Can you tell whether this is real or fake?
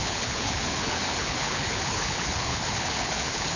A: fake